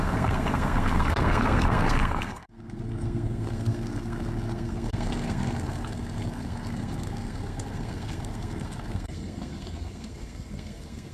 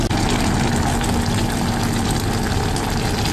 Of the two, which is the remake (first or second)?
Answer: first